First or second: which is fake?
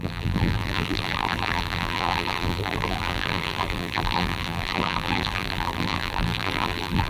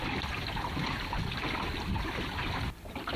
first